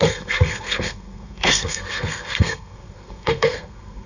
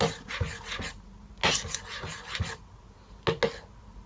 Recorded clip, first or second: second